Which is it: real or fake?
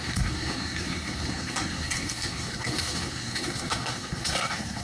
fake